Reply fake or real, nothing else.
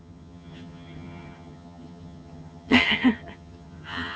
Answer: fake